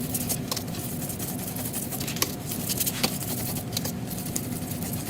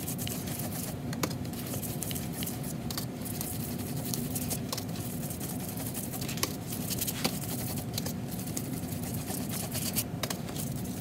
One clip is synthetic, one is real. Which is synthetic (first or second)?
second